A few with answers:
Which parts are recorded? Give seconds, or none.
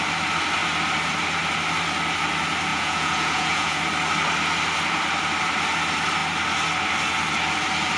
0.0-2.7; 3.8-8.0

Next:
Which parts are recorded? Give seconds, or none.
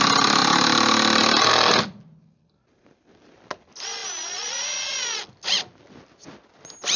0.0-7.0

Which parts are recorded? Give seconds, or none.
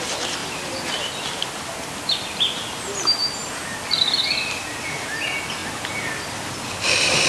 0.0-7.3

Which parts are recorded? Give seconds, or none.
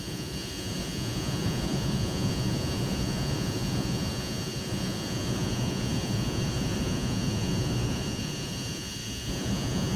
none